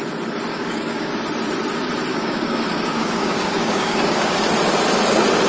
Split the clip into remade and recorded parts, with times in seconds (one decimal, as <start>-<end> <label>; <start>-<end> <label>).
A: 0.0-0.5 recorded; 0.5-1.1 remade; 1.1-2.1 recorded; 2.1-4.4 remade; 4.4-5.5 recorded